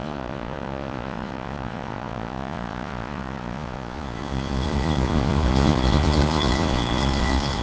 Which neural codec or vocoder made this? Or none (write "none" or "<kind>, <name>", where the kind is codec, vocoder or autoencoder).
vocoder, Vocos